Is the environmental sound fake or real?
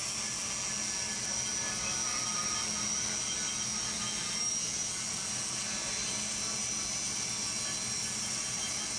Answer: real